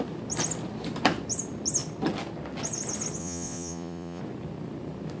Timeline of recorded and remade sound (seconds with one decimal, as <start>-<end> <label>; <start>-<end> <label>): 0.0-3.2 recorded; 3.2-4.2 remade; 4.2-5.2 recorded